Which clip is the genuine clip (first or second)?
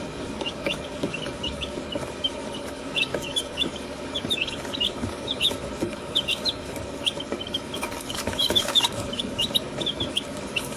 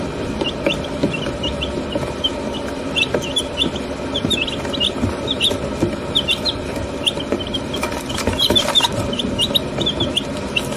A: second